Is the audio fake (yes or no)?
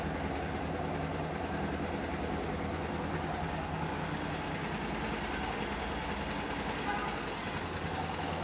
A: no